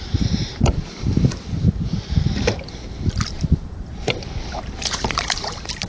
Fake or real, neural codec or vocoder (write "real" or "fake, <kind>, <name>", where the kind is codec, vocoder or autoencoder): fake, vocoder, BigVGAN v2